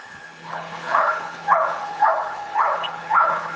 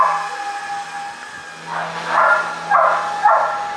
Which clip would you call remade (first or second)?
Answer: first